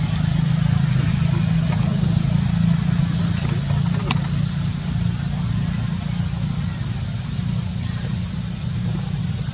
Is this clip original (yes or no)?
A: yes